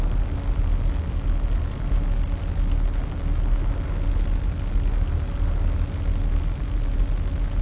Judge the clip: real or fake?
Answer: real